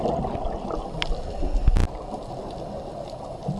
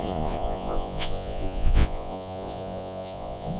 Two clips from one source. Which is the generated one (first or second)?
second